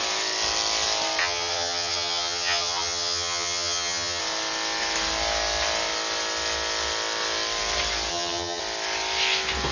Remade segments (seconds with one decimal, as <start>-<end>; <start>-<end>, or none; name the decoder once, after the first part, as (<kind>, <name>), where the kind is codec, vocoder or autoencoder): 1.2-4.2 (vocoder, HiFi-GAN); 8.1-8.6